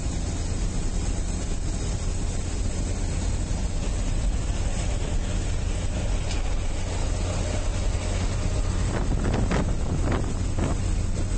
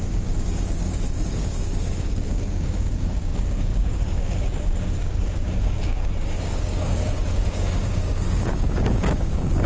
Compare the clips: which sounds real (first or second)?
first